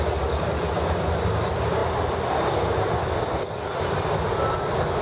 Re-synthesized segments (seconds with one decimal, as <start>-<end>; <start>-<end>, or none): none

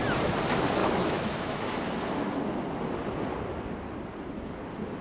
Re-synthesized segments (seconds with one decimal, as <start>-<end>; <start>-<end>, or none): 0.8-1.6

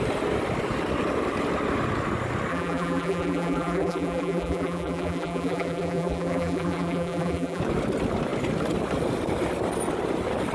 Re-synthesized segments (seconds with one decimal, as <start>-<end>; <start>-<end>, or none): 2.5-7.6

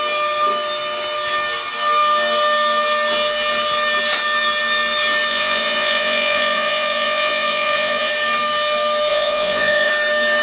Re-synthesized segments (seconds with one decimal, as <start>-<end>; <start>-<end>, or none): 5.3-8.1; 9.1-9.9

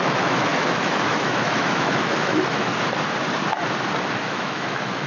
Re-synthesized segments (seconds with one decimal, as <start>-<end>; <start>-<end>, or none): 0.0-2.7; 4.2-5.1

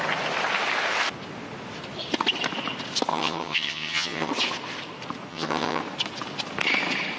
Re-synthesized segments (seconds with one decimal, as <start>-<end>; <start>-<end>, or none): 3.1-4.3; 5.3-5.8

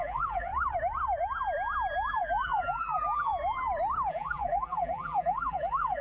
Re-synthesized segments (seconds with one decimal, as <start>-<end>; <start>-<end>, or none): 0.0-0.5; 2.1-3.3; 4.1-6.0